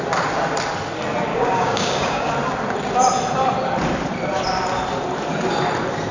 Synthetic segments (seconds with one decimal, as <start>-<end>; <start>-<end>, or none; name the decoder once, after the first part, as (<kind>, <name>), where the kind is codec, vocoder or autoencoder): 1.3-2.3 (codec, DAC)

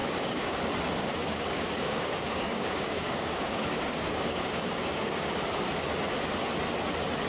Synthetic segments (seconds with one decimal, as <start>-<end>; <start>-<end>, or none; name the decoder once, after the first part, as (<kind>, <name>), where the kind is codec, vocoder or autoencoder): 0.0-0.6 (codec, DAC); 1.0-5.3

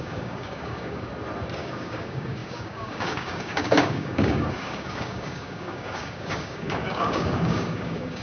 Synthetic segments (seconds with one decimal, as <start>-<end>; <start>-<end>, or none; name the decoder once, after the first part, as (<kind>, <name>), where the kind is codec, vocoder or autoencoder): 0.0-1.1 (codec, DAC); 1.6-8.2